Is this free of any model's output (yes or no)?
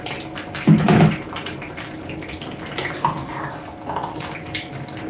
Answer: yes